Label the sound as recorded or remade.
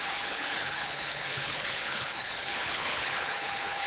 remade